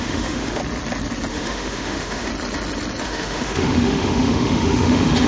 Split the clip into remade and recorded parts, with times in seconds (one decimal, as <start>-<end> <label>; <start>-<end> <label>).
0.0-0.6 remade; 0.6-1.3 recorded; 1.3-2.3 remade; 2.3-3.0 recorded; 3.0-5.3 remade